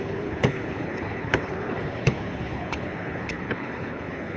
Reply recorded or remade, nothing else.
remade